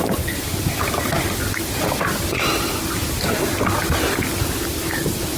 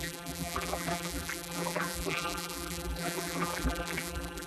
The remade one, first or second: second